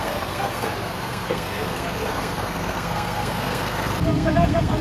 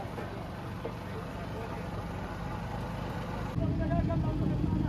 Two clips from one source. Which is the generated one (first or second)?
first